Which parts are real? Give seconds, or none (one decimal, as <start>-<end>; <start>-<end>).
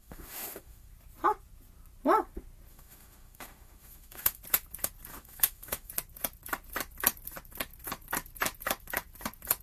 0.9-2.7; 4.4-5.1; 5.9-9.6